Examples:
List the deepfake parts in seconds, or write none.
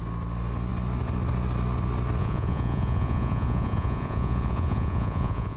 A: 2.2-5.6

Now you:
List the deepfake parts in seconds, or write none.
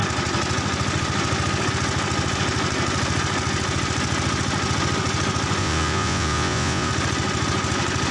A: 5.6-6.9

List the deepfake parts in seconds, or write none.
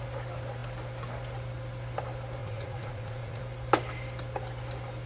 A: 2.4-3.4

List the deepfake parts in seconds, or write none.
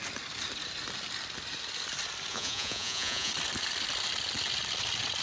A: 2.3-3.3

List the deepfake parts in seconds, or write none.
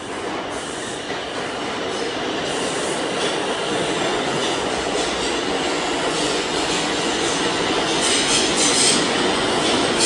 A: 0.0-1.2; 3.6-10.1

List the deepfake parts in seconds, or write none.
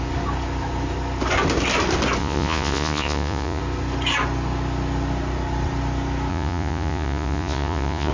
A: 2.2-3.6; 6.3-8.1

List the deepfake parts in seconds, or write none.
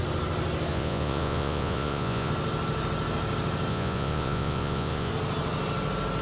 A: 0.7-2.3; 3.7-5.1